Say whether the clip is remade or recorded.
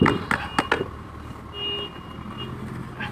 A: recorded